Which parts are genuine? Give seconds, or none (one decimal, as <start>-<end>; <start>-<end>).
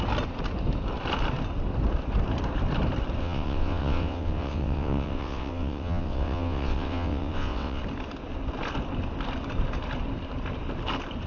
0.0-3.2; 7.8-11.3